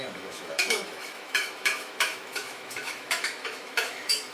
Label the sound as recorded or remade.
remade